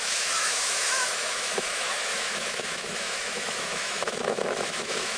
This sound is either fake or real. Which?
fake